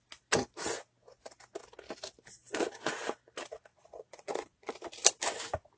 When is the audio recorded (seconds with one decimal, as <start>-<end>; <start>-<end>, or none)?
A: 0.0-3.7; 4.7-5.8